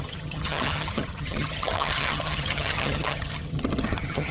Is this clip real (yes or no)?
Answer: no